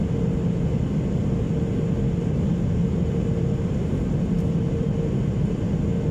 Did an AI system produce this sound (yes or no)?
no